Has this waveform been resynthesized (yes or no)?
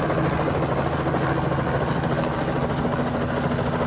no